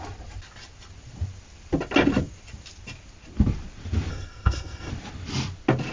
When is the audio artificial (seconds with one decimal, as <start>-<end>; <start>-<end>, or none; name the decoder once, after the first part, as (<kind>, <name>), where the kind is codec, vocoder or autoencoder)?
4.1-4.9 (codec, SNAC)